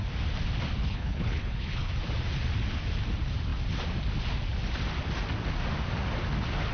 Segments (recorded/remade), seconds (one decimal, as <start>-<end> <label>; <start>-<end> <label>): 0.0-0.8 recorded; 0.8-1.9 remade; 1.9-6.7 recorded